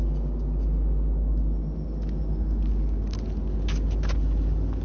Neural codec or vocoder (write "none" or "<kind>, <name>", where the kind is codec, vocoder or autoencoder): none